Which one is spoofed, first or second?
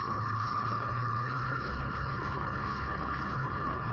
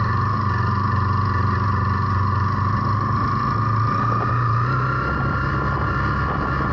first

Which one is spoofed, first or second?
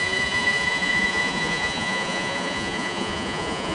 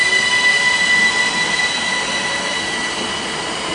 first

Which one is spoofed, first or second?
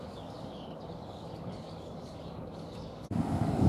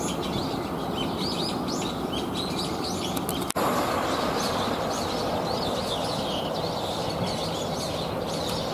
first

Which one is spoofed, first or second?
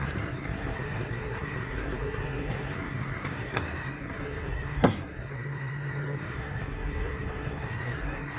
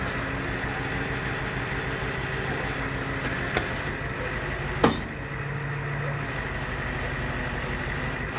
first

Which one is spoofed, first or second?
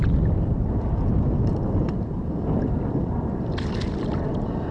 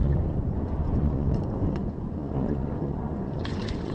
second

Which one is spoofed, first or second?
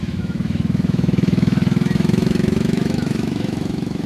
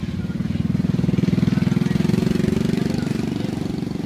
first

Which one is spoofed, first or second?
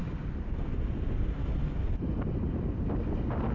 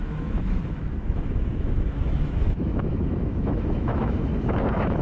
second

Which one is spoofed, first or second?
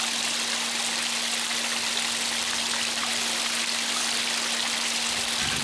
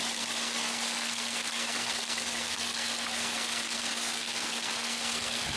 second